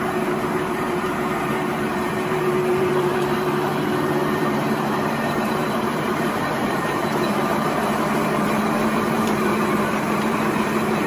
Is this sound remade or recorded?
remade